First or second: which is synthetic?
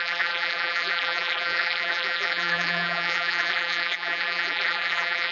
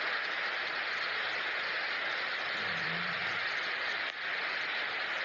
first